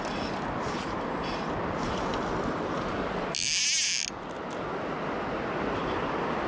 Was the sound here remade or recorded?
recorded